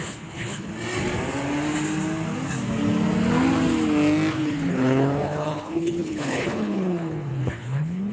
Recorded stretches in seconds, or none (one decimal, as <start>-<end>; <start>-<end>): 0.7-4.3

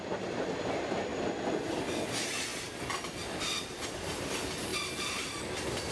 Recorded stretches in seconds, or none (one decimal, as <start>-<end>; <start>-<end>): 0.0-5.9

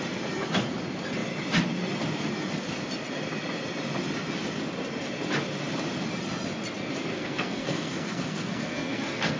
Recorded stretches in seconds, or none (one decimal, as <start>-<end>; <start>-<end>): 0.0-7.1

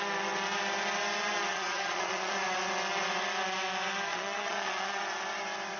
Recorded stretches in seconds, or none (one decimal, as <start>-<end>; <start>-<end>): 0.0-1.5; 2.3-4.1; 5.0-5.8

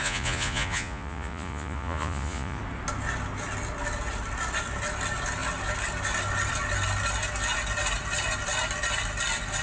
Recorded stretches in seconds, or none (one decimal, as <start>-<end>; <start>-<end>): 2.6-9.6

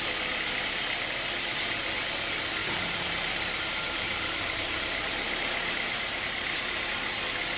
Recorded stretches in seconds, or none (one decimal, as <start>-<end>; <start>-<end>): 0.0-2.6; 6.6-7.6

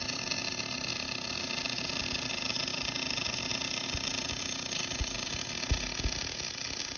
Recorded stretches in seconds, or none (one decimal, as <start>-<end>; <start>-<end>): 0.0-7.0